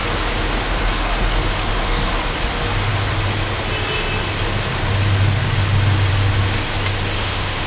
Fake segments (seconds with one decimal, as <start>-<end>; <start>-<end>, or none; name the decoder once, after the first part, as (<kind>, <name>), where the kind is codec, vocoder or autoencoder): 7.2-7.7 (autoencoder, DAC-VAE)